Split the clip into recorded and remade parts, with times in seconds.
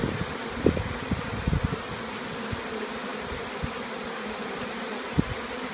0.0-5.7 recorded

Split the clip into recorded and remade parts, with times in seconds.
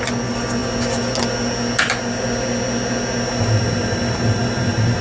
0.0-5.0 recorded